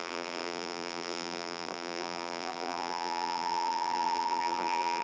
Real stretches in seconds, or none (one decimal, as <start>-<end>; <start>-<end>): none